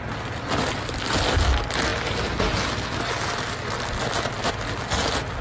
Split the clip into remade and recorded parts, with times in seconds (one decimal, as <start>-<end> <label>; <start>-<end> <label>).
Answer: 0.0-5.4 recorded